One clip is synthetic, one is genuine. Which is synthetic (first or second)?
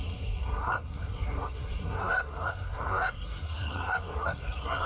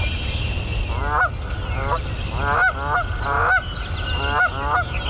first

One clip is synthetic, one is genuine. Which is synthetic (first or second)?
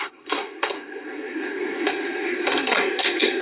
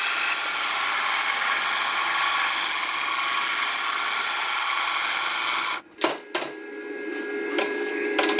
first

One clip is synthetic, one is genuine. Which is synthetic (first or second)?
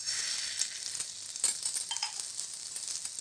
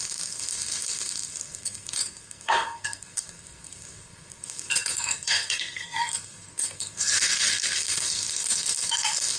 second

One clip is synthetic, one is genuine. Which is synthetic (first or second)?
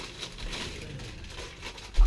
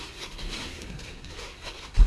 second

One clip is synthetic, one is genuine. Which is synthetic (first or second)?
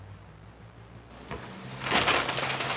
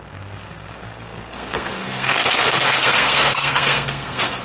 second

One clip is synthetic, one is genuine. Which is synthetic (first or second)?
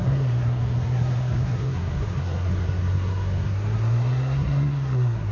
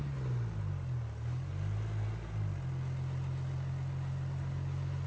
first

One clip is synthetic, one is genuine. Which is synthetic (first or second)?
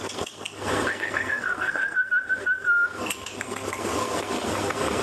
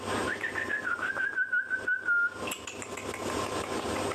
first